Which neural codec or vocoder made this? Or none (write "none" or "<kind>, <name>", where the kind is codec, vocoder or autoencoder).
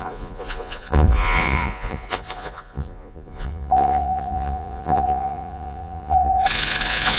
vocoder, Vocos